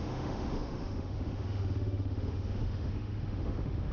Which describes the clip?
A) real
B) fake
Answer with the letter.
B